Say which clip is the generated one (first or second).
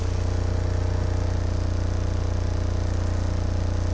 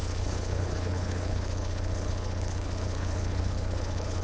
second